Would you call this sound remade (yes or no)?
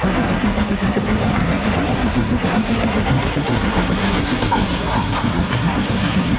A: yes